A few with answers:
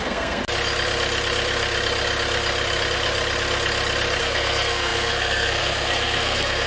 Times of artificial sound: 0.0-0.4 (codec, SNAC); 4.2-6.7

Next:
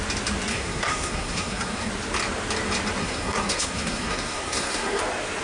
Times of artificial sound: 0.5-1.9 (codec, SNAC); 3.0-5.0

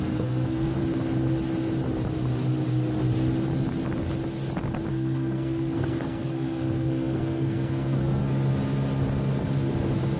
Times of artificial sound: 0.0-0.8 (codec, SNAC); 4.9-8.2

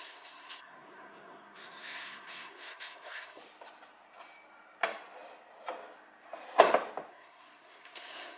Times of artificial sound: 0.0-3.4 (codec, SNAC); 7.1-8.4

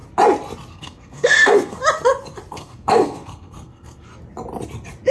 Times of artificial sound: 0.7-1.8 (codec, SNAC); 2.5-4.1

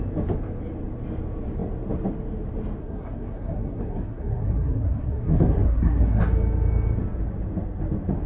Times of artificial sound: 2.8-6.2 (codec, SNAC)